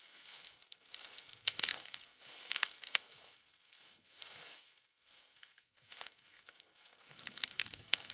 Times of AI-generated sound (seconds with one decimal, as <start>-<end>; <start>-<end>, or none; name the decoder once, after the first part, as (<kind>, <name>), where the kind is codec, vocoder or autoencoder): 0.0-8.1 (codec, SNAC)